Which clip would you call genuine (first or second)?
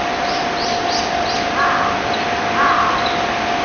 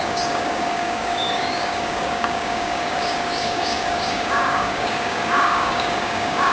first